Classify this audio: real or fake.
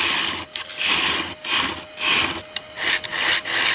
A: real